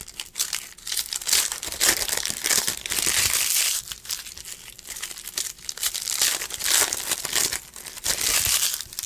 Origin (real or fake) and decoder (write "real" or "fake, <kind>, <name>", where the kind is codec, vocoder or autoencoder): real